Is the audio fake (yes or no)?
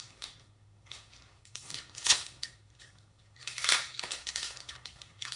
yes